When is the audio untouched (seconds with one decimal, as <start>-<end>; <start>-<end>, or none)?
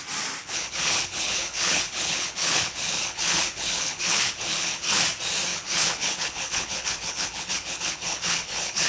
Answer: 0.0-0.4; 5.0-5.5